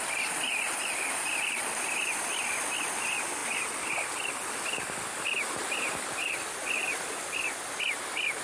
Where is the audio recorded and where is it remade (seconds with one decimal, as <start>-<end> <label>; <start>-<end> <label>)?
0.0-8.4 recorded

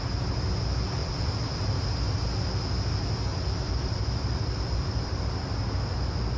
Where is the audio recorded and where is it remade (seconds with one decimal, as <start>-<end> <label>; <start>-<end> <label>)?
0.0-1.0 recorded; 1.0-1.8 remade; 1.8-3.3 recorded; 3.3-5.2 remade; 5.2-6.4 recorded